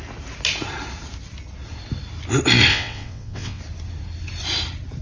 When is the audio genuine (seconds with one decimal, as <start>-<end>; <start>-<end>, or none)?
0.0-2.7; 3.6-5.0